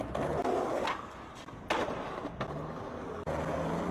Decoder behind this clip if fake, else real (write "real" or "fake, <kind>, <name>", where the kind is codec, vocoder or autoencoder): real